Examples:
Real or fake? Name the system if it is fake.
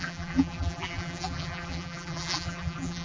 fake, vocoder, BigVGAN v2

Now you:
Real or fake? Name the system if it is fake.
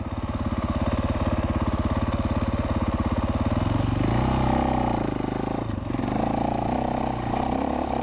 real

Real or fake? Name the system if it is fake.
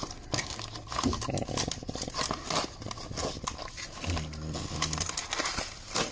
real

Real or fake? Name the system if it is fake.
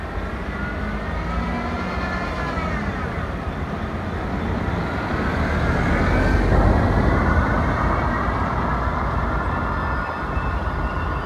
real